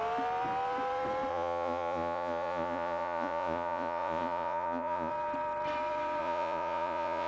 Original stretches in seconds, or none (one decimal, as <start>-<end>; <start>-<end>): 0.0-1.3; 5.1-6.2